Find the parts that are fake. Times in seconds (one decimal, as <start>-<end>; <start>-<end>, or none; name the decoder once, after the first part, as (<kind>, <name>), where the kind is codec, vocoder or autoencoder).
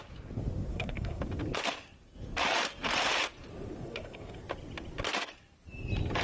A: 0.7-1.2 (codec, SNAC); 3.8-4.4